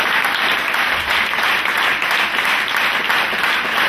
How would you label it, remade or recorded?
recorded